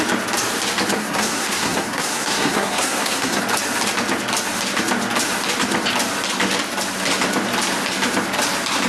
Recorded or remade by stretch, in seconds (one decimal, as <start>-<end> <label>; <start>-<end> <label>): 0.0-1.0 recorded; 1.0-3.4 remade; 3.4-8.9 recorded